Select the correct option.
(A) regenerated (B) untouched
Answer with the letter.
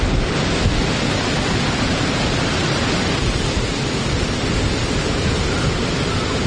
B